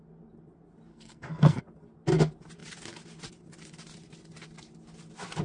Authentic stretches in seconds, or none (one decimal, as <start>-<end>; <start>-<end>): 0.0-0.9; 1.6-5.4